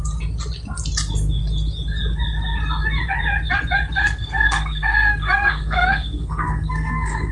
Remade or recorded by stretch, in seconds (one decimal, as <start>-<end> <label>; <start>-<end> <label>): 0.0-4.0 recorded; 4.0-7.3 remade